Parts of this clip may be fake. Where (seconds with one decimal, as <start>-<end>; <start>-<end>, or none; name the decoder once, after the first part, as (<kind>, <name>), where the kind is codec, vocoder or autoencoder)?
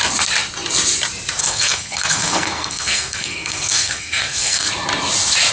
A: 1.4-4.7 (codec, SNAC)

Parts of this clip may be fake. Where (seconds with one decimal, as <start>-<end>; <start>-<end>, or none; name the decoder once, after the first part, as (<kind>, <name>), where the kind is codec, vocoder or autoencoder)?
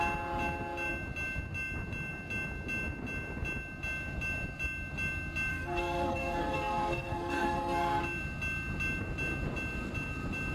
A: 5.5-8.0 (codec, SNAC)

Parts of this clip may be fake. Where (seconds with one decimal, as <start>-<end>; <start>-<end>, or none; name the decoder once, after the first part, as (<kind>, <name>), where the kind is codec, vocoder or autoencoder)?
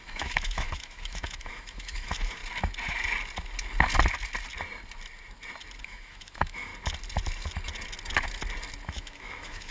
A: 0.0-2.4 (autoencoder, DAC-VAE); 5.8-6.7; 8.9-9.7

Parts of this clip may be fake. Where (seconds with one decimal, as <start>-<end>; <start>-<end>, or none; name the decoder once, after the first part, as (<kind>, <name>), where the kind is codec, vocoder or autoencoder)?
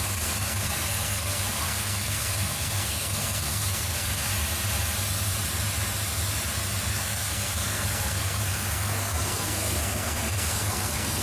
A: 0.0-4.3 (codec, SNAC); 6.9-11.2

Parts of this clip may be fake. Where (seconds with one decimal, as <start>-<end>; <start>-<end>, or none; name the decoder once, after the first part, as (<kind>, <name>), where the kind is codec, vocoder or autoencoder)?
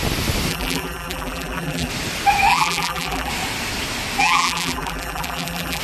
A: 0.5-1.9 (vocoder, BigVGAN v2); 2.5-3.3; 4.2-5.8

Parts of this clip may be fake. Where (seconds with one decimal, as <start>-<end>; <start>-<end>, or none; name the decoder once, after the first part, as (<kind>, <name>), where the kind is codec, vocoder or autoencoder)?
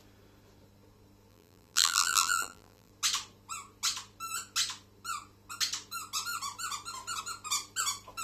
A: 1.3-2.9 (vocoder, BigVGAN v2)